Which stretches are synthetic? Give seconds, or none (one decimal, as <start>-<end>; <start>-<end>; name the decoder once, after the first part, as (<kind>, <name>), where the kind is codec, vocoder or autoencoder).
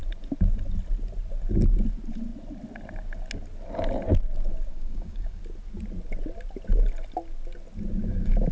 4.7-5.4 (codec, DAC)